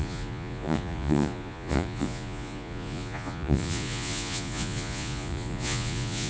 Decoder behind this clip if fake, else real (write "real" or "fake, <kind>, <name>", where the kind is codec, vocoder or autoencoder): fake, vocoder, Vocos